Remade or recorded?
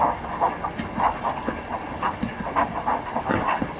recorded